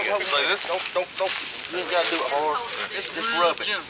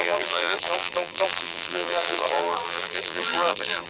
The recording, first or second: first